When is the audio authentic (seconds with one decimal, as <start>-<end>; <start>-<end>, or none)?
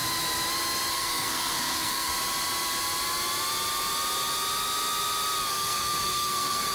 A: 0.0-0.9; 2.1-5.5